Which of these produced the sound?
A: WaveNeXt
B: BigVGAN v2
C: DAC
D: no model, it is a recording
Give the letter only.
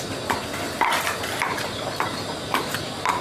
B